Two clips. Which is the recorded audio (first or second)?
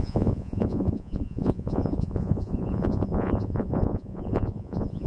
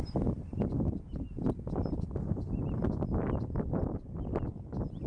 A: second